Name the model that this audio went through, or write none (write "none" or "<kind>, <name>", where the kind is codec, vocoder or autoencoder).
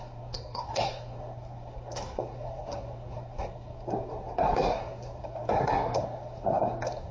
codec, SNAC